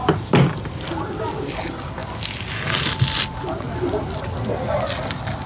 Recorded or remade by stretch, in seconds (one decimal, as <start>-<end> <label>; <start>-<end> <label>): 0.0-5.5 recorded